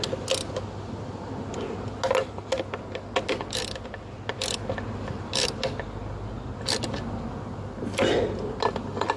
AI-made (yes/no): no